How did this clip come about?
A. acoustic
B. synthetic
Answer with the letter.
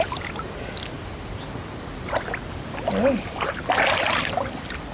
A